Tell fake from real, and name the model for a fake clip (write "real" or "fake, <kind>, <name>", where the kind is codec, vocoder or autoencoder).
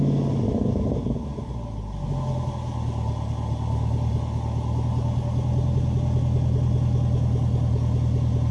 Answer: real